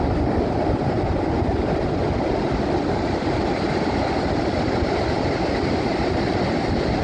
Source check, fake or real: fake